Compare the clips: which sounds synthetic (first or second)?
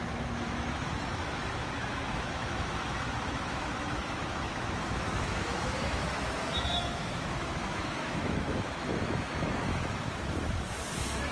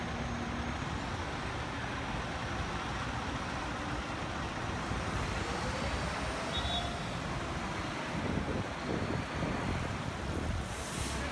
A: first